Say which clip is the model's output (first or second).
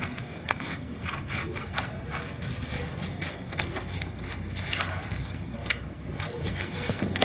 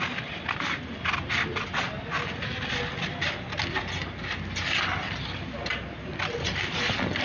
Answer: first